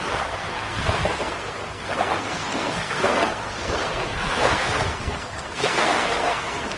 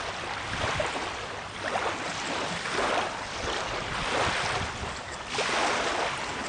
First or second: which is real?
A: second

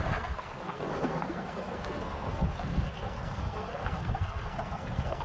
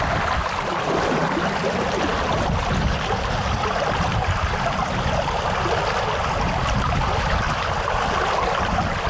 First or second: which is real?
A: second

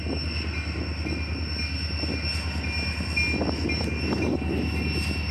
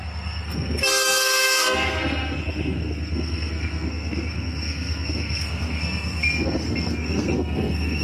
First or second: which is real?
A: first